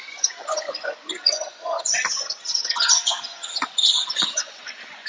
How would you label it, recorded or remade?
remade